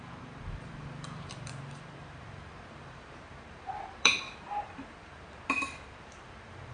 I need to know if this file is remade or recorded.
remade